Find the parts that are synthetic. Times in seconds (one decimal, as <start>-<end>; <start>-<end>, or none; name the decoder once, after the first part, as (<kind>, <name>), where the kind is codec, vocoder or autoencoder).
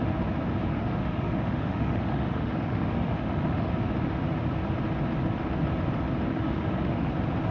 0.7-3.7 (autoencoder, DAC-VAE); 6.3-7.1